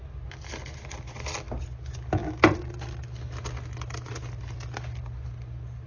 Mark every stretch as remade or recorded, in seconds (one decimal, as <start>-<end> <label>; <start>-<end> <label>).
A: 0.0-5.9 recorded